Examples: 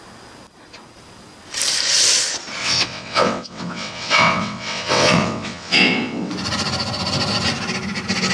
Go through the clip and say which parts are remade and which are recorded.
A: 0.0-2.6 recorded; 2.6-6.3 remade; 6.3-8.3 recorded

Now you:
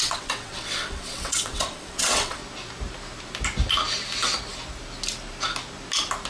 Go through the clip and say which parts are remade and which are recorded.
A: 0.0-2.4 remade; 2.4-6.3 recorded

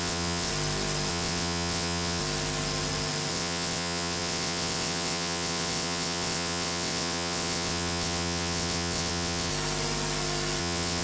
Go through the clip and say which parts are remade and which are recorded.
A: 0.0-0.5 remade; 0.5-1.1 recorded; 1.1-2.2 remade; 2.2-3.3 recorded; 3.3-9.5 remade; 9.5-10.6 recorded; 10.6-11.0 remade

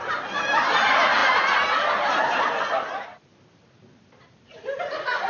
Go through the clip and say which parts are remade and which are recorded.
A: 0.0-5.3 recorded

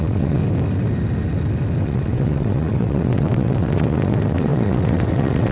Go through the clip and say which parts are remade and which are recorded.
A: 0.0-0.4 remade; 0.4-1.8 recorded; 1.8-5.5 remade

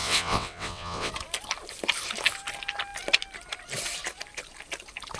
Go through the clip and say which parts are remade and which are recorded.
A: 0.0-1.1 remade; 1.1-5.2 recorded